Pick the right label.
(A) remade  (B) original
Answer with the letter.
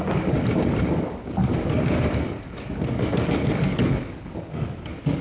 A